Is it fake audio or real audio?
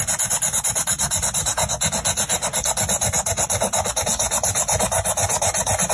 real